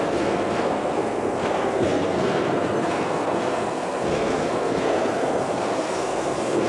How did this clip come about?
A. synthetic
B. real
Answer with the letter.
A